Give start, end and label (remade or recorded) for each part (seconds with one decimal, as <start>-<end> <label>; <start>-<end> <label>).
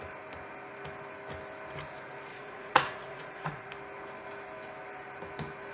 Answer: 0.0-2.3 recorded; 2.3-3.7 remade; 3.7-5.7 recorded